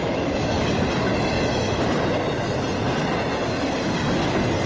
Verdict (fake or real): real